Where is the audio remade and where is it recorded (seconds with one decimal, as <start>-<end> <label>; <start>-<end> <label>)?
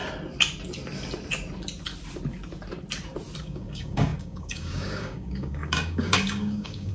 0.0-3.4 recorded; 3.4-6.9 remade